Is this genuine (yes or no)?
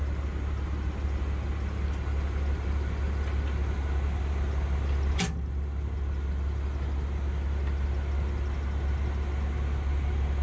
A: yes